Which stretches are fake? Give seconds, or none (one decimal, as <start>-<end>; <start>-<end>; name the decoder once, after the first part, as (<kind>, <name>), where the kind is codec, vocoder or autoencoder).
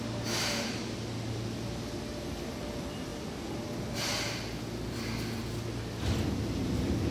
none